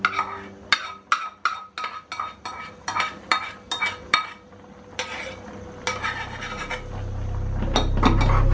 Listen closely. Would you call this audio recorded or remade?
recorded